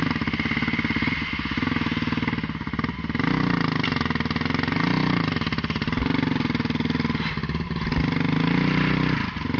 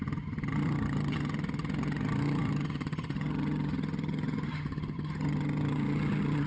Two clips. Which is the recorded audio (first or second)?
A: first